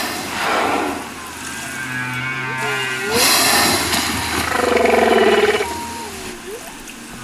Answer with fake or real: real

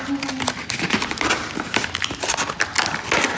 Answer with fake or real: real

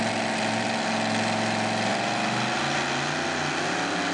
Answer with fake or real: real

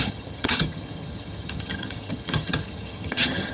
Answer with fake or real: fake